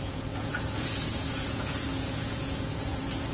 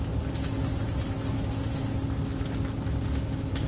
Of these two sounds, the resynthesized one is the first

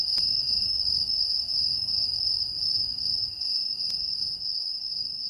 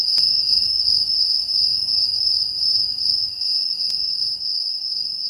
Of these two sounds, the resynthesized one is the first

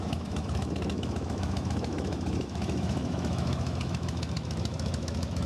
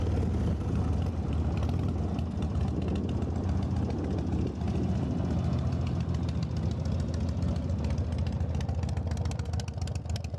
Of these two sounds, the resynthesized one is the first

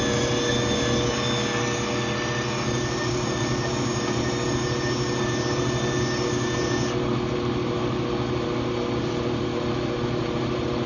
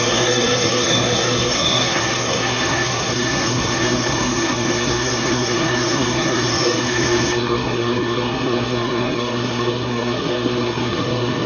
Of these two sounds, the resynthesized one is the second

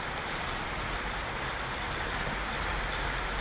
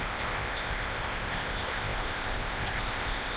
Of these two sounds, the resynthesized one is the second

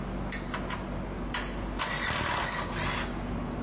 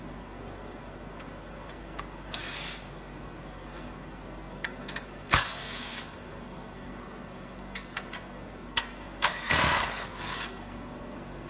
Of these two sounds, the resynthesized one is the second